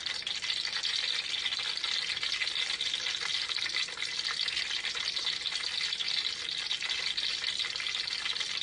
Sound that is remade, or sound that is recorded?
recorded